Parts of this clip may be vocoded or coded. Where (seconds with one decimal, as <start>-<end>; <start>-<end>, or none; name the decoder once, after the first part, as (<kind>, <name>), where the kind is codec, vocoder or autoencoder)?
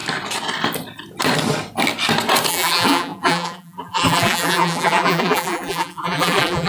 2.5-6.7 (vocoder, BigVGAN v2)